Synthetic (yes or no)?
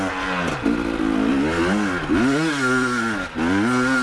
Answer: no